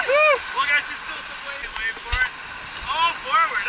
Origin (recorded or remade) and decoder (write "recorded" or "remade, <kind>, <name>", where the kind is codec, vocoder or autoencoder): recorded